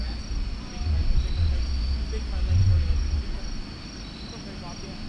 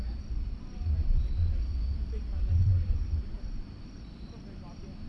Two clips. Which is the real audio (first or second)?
first